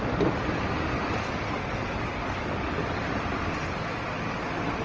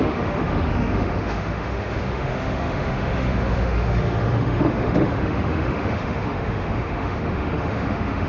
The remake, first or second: second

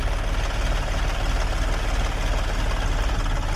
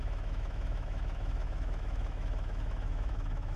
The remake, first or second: second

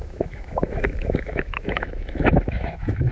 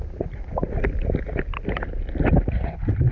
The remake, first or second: first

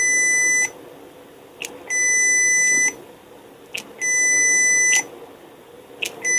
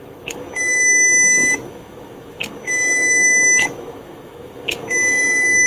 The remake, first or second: second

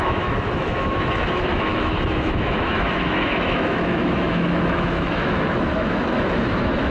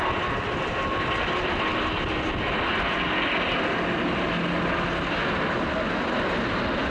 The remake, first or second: first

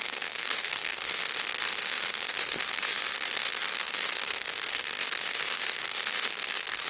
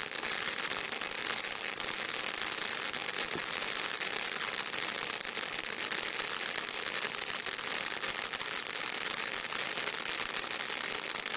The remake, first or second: first